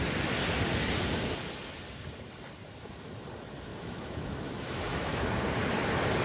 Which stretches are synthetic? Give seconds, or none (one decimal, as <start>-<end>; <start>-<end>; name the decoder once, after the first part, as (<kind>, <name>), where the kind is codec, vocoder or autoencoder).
3.7-5.2 (autoencoder, DAC-VAE)